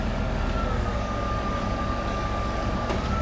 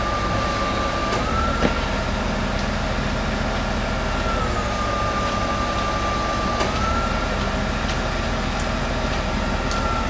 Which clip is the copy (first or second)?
first